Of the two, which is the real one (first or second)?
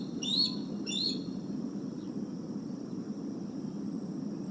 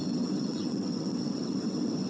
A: first